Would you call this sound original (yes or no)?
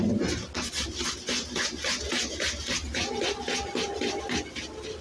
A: yes